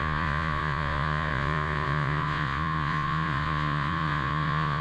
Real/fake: fake